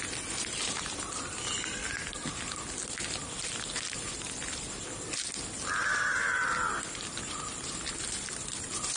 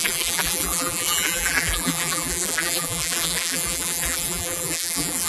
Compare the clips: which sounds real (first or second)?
first